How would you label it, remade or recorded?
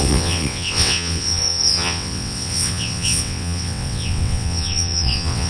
remade